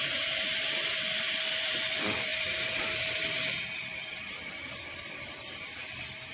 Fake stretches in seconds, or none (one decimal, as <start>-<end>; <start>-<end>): 0.0-6.3